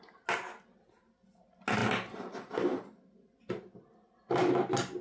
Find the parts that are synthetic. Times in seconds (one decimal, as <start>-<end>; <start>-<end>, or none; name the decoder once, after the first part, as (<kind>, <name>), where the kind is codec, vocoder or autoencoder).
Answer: none